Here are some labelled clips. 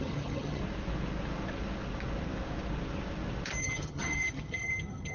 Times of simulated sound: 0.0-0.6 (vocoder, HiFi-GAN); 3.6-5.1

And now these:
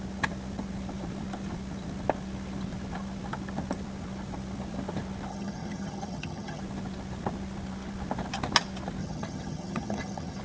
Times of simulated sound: 5.3-6.6 (vocoder, HiFi-GAN); 9.0-10.4

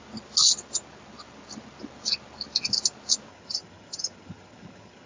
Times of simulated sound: 3.3-5.1 (vocoder, HiFi-GAN)

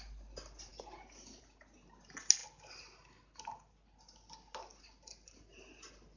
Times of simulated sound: none

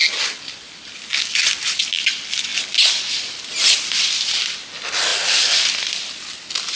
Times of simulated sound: none

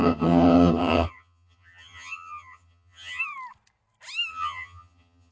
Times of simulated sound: 0.0-3.2 (vocoder, HiFi-GAN); 4.3-5.3

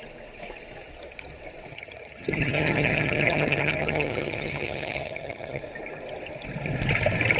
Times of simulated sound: 1.7-5.6 (vocoder, HiFi-GAN)

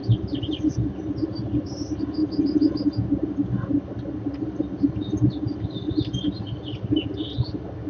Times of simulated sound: none